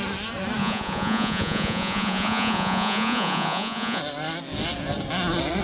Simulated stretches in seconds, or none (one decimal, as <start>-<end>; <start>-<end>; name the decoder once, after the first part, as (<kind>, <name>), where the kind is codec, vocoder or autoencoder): 0.6-4.0 (vocoder, Vocos)